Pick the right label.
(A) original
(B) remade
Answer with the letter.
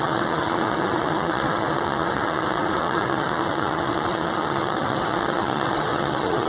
B